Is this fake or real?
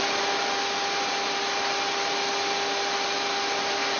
real